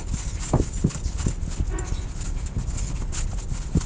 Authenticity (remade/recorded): recorded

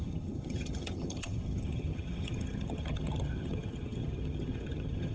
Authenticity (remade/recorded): remade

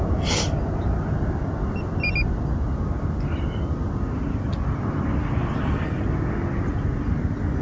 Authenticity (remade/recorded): recorded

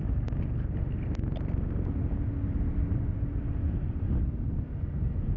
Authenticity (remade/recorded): recorded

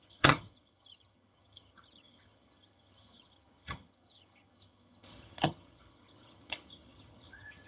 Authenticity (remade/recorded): remade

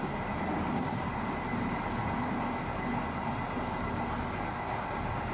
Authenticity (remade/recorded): recorded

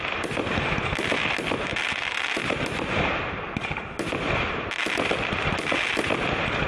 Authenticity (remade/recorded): recorded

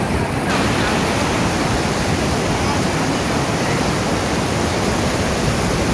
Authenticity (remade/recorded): recorded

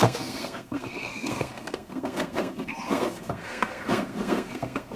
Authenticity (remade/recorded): remade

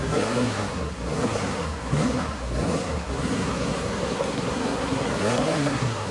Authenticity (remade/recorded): remade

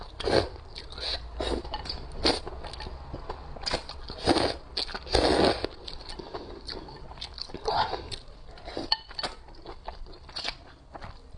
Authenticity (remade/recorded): recorded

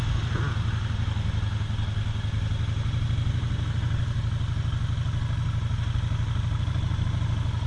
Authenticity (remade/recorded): recorded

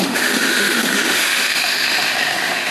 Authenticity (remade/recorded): remade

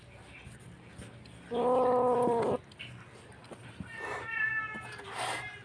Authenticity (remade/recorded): recorded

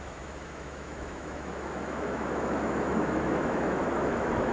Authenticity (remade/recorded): remade